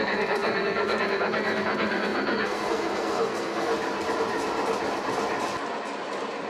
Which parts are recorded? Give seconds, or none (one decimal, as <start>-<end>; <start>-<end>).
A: 3.7-6.5